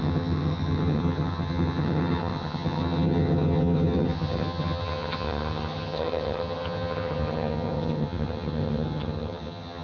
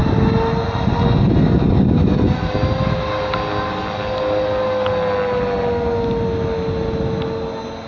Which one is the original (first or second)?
second